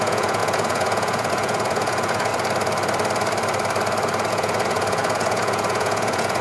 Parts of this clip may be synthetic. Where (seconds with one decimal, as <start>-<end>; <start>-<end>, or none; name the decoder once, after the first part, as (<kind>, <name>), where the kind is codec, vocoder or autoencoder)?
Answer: 0.0-2.3 (vocoder, Vocos); 4.3-6.4